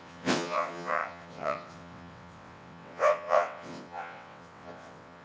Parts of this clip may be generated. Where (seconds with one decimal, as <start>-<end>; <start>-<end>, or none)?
0.0-5.2